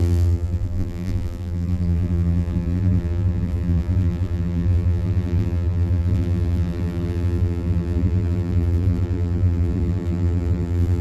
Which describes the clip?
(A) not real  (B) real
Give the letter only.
A